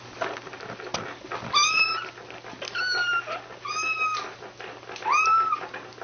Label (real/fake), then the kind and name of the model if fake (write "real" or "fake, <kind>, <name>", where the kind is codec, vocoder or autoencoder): real